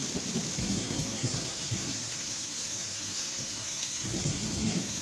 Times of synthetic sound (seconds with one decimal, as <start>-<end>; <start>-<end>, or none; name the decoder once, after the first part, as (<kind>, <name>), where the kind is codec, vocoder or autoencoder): 0.6-5.0 (codec, SNAC)